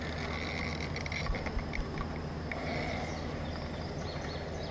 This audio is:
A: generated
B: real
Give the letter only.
B